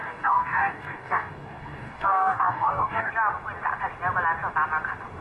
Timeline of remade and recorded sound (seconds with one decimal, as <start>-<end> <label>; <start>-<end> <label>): 0.0-3.1 remade; 3.1-5.2 recorded